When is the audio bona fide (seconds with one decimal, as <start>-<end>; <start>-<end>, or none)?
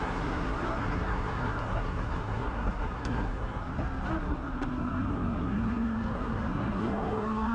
3.7-4.2